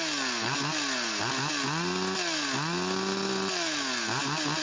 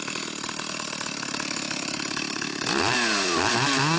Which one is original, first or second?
first